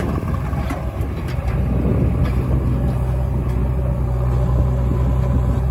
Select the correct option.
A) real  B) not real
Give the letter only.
A